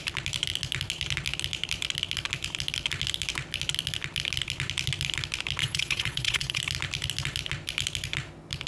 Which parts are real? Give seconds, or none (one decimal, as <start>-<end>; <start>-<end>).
0.0-5.6; 6.6-8.7